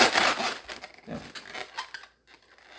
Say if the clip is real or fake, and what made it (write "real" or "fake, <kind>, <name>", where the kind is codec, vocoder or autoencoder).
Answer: real